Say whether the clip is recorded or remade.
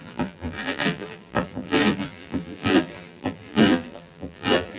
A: remade